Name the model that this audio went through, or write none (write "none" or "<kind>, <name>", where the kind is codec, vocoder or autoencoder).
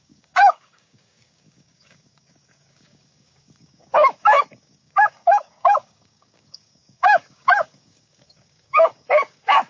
codec, DAC